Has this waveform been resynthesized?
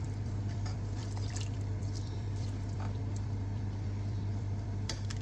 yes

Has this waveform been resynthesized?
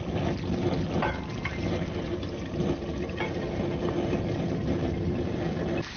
no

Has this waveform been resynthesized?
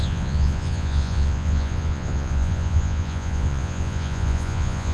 yes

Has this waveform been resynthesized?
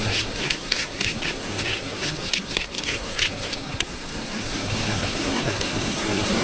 yes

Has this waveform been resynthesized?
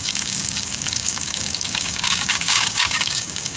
yes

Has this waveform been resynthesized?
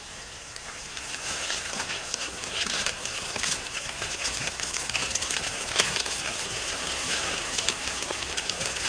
yes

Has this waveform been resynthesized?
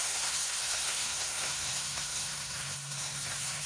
yes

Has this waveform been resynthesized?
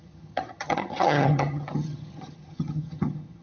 yes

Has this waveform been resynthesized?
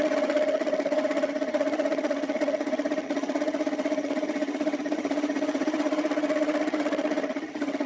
yes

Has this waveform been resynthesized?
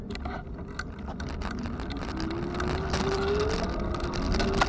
no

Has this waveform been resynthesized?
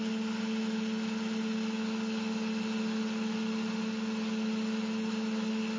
no